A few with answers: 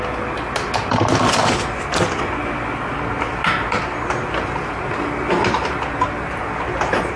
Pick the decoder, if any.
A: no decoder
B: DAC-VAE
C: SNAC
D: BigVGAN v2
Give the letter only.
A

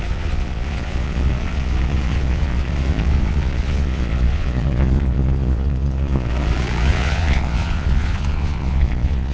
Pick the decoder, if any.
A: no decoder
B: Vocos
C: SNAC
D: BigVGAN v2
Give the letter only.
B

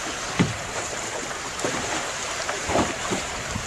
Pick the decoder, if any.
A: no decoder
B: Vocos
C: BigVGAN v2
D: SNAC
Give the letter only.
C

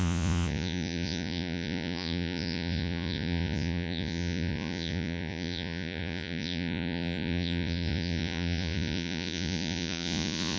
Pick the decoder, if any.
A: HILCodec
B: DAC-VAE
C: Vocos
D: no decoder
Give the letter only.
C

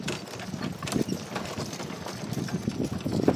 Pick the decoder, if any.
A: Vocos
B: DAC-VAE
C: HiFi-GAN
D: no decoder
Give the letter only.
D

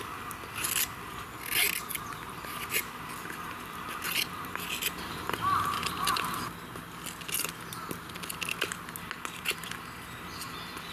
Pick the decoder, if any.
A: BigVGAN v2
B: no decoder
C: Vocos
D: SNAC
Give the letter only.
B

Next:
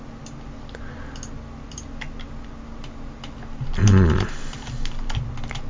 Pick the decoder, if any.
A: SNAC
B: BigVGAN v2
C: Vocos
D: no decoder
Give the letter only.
D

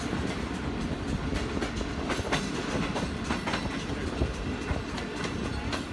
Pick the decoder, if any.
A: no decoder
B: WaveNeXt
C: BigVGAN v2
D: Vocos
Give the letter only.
A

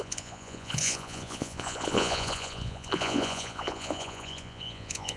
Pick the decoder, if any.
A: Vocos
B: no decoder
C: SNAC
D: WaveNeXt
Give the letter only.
A